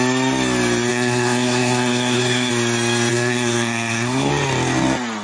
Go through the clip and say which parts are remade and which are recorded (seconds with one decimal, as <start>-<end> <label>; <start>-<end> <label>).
0.0-0.9 recorded; 0.9-2.5 remade; 2.5-3.1 recorded; 3.1-4.3 remade; 4.3-5.2 recorded